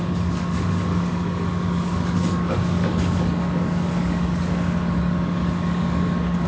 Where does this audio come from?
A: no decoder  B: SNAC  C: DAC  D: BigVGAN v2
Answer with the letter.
C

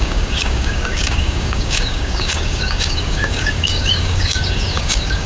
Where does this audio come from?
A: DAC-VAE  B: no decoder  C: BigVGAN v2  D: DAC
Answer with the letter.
D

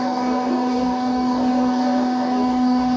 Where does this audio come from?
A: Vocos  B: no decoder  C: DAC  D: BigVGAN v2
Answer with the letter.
C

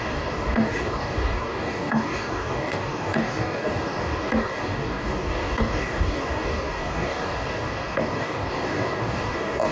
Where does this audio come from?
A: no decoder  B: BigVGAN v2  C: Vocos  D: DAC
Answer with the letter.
D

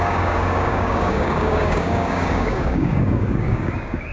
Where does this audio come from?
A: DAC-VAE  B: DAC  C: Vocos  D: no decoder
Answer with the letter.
B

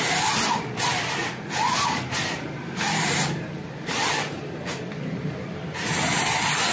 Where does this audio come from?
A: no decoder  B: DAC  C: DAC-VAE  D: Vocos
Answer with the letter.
A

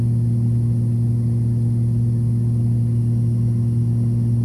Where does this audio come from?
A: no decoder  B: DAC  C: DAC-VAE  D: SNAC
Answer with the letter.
A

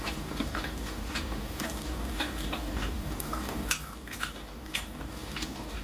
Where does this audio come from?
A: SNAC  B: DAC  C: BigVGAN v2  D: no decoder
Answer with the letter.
B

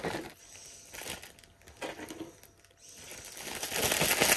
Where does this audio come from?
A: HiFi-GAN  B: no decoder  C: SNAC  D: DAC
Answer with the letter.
B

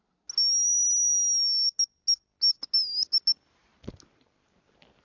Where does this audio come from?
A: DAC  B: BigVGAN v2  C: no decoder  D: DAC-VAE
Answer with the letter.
C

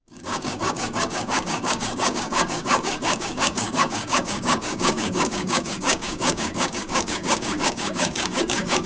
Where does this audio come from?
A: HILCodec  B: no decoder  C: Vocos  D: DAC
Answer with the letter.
D